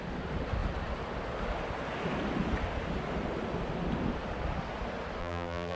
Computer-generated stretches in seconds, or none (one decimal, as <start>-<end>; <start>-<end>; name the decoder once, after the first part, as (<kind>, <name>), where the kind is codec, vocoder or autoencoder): 5.2-5.8 (vocoder, BigVGAN v2)